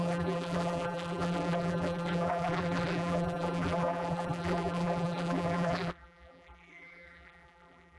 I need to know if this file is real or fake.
fake